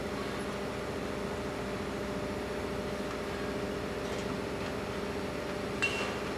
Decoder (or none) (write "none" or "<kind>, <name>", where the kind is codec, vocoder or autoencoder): none